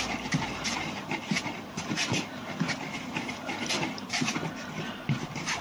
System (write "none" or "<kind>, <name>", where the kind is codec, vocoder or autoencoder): vocoder, BigVGAN v2